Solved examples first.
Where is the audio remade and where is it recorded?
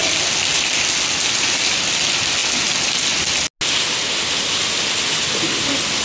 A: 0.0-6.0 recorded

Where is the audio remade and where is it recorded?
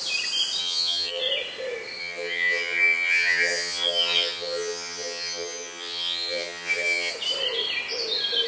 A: 0.0-0.6 recorded; 0.6-1.2 remade; 1.2-2.0 recorded; 2.0-7.1 remade; 7.1-8.5 recorded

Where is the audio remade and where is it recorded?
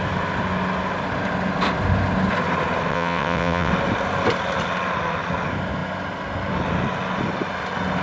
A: 0.0-2.9 recorded; 2.9-3.7 remade; 3.7-8.0 recorded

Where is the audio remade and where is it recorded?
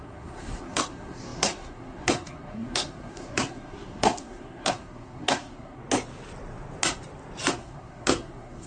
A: 0.0-5.8 remade; 5.8-7.5 recorded; 7.5-8.7 remade